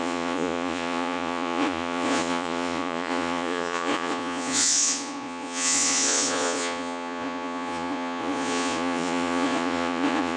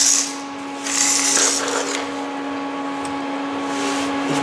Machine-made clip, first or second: first